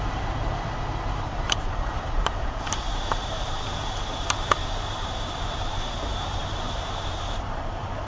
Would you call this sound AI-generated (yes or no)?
yes